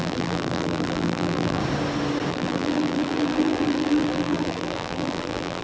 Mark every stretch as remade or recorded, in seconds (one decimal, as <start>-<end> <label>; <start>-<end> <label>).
0.0-1.6 remade; 1.6-2.3 recorded; 2.3-5.6 remade